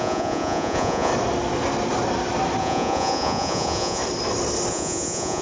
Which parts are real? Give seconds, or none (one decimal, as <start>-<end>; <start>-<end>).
1.1-2.6; 4.0-4.7